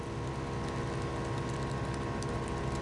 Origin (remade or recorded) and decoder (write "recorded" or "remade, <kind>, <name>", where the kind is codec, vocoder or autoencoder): recorded